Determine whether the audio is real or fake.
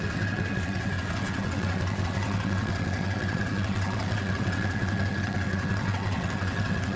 fake